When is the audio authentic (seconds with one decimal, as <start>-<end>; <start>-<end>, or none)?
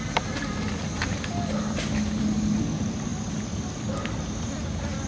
0.0-5.1